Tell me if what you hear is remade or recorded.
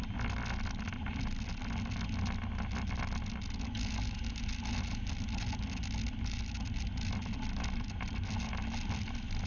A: recorded